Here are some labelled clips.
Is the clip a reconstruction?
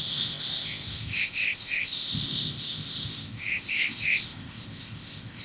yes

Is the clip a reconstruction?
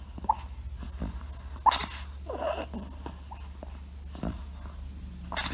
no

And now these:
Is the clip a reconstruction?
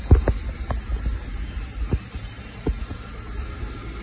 no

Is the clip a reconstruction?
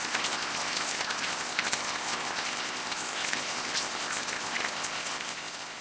yes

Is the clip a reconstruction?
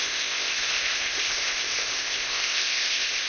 yes